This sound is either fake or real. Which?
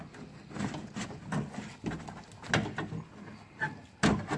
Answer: real